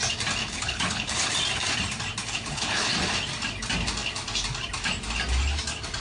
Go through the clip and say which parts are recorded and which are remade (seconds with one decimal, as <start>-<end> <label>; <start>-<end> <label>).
0.0-0.4 recorded; 0.4-1.3 remade; 1.3-2.2 recorded; 2.2-2.9 remade; 2.9-6.0 recorded